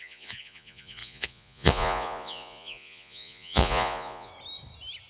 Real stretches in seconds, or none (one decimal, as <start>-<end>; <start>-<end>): 4.3-5.1